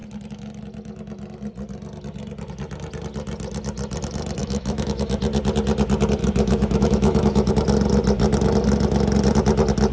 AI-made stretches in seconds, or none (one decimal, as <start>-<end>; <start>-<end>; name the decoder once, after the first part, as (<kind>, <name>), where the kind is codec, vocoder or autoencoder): 4.4-5.2 (autoencoder, DAC-VAE); 6.2-7.5